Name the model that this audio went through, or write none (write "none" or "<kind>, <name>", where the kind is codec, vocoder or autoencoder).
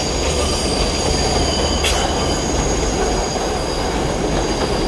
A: none